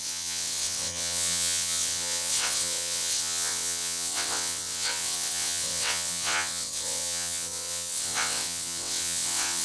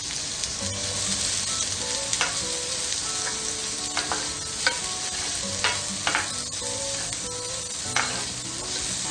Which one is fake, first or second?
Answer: first